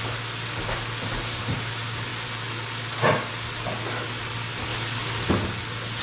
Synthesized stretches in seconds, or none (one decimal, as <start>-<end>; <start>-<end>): none